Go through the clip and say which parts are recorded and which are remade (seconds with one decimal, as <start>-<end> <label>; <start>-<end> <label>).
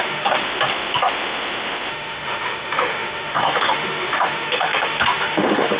0.0-0.4 remade; 0.4-1.9 recorded; 1.9-5.8 remade